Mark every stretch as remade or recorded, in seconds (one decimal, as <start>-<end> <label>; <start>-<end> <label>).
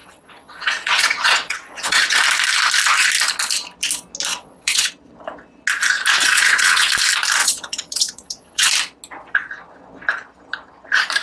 0.0-2.2 remade; 2.2-4.3 recorded; 4.3-4.9 remade; 4.9-6.2 recorded; 6.2-6.9 remade; 6.9-7.4 recorded; 7.4-8.7 remade; 8.7-11.2 recorded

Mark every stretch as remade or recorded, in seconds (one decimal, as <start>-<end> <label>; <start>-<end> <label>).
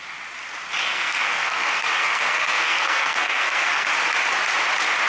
0.0-0.8 recorded; 0.8-3.9 remade; 3.9-5.1 recorded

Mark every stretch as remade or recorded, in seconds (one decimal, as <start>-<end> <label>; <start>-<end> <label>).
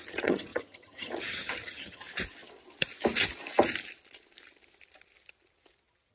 0.0-2.0 remade; 2.0-6.1 recorded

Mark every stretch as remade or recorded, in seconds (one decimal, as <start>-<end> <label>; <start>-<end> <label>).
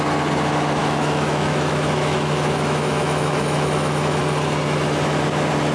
0.0-0.8 recorded; 0.8-4.2 remade; 4.2-5.7 recorded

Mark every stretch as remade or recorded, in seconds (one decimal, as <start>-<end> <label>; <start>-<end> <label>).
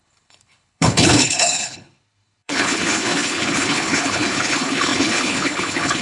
0.0-6.0 remade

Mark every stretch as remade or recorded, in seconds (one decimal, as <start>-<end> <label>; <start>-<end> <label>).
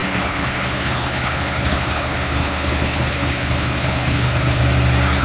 0.0-4.6 remade; 4.6-5.2 recorded